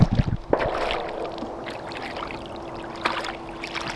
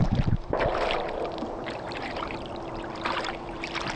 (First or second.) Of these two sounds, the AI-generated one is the second